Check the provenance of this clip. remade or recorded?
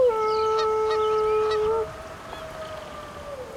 recorded